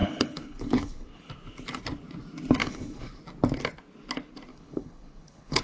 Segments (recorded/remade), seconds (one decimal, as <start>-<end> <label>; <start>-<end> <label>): 0.0-1.3 remade; 1.3-2.6 recorded; 2.6-3.2 remade; 3.2-4.5 recorded; 4.5-5.6 remade